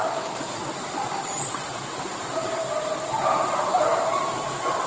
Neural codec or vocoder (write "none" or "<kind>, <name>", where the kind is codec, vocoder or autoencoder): none